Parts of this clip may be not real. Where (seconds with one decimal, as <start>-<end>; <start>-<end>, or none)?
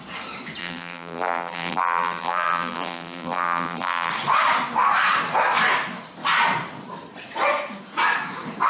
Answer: 0.6-4.1